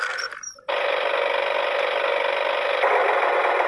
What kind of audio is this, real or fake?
real